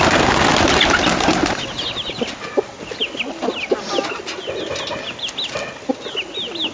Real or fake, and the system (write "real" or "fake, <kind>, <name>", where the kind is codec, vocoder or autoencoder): real